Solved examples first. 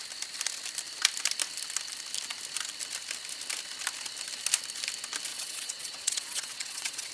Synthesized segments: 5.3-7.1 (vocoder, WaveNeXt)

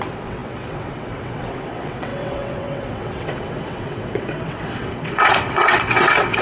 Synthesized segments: 0.0-6.4 (vocoder, WaveNeXt)

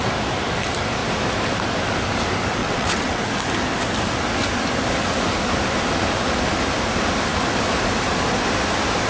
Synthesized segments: 2.6-3.2 (vocoder, WaveNeXt)

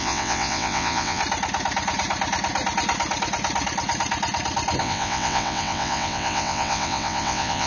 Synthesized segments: 0.0-1.2 (vocoder, WaveNeXt); 4.8-7.7

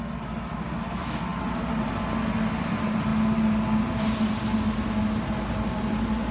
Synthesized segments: none

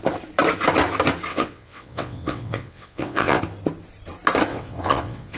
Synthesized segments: 1.3-3.4 (vocoder, WaveNeXt); 4.5-5.4

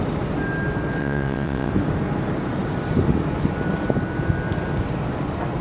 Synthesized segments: 1.0-1.7 (vocoder, WaveNeXt)

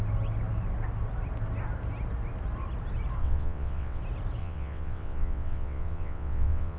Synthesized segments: 3.2-4.0 (vocoder, WaveNeXt); 4.4-6.8